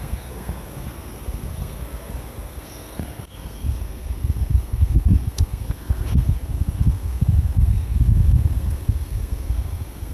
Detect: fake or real fake